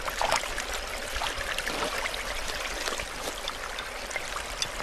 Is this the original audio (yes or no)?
yes